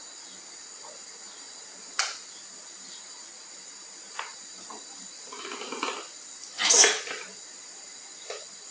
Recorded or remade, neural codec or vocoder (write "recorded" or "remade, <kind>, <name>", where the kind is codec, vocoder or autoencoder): recorded